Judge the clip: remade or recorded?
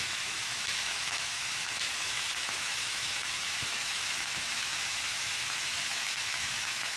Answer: remade